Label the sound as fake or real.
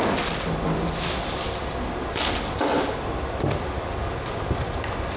real